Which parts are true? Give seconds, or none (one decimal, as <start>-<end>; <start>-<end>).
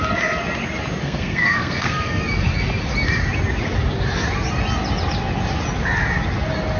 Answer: 0.0-1.0; 2.2-6.8